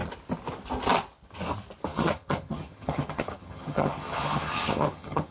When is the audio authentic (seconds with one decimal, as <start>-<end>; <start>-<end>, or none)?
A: 0.0-1.9